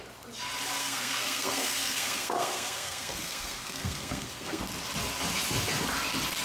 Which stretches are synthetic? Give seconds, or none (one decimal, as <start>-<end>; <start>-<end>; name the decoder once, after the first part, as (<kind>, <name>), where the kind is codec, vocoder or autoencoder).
0.8-4.6 (codec, SNAC)